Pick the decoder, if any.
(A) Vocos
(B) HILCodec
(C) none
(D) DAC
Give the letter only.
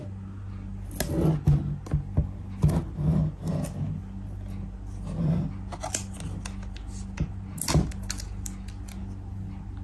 C